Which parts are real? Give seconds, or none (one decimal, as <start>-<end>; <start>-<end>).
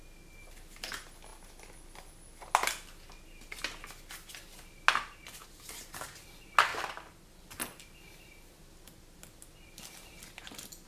0.0-6.7; 7.4-10.9